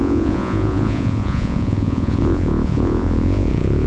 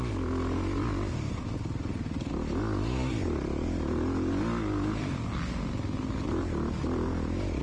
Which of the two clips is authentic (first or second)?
second